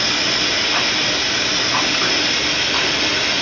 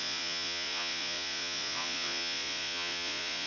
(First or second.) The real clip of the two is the first